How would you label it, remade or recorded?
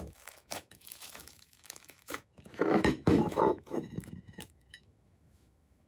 remade